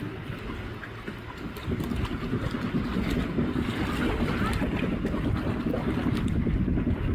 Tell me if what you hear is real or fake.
real